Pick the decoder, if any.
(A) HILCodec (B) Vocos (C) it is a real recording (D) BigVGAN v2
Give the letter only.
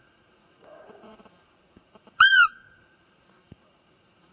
B